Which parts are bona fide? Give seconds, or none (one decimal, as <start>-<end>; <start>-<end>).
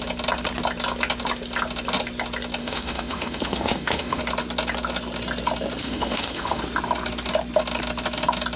0.0-2.6; 4.2-5.8; 6.6-8.6